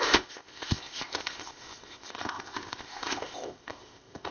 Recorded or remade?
remade